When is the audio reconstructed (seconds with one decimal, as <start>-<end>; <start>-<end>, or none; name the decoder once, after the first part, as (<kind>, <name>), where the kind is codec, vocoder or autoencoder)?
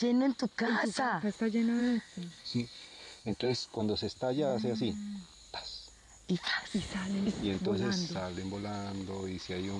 1.8-3.8 (codec, SNAC)